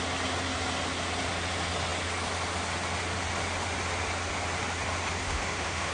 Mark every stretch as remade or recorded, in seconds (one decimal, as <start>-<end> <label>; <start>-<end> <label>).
0.0-5.2 recorded; 5.2-5.9 remade